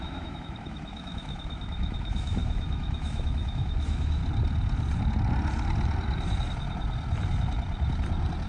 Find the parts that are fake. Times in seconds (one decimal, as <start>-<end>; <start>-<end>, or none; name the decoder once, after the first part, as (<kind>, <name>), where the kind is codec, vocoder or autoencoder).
0.0-4.2 (autoencoder, DAC-VAE)